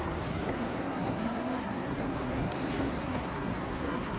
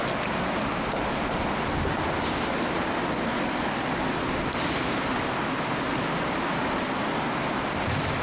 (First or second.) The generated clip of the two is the first